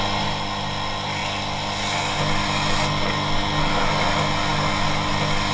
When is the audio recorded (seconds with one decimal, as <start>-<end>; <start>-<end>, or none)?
0.0-5.5